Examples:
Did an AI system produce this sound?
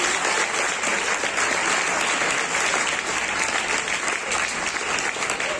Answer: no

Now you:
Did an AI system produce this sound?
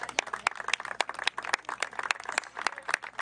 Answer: no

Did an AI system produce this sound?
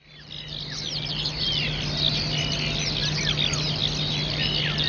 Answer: no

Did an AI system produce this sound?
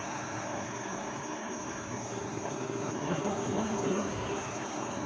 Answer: yes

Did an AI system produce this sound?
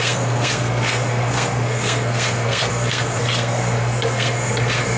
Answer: yes